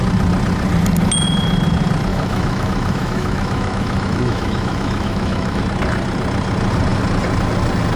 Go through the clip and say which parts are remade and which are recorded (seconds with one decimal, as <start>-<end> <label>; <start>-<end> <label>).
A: 0.0-2.1 recorded; 2.1-5.6 remade; 5.6-8.0 recorded